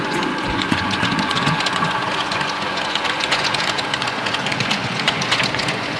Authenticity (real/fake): fake